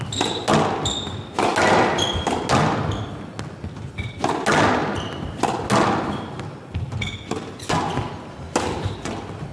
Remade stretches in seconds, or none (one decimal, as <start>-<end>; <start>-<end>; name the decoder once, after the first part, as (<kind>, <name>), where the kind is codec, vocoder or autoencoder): none